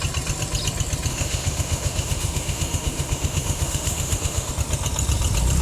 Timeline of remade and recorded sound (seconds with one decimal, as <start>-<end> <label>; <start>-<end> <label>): 0.0-1.1 recorded; 1.1-4.5 remade; 4.5-5.6 recorded